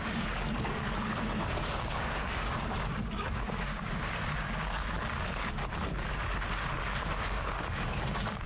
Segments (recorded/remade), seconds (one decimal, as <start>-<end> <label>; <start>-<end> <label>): 0.0-5.6 remade; 5.6-7.2 recorded; 7.2-8.5 remade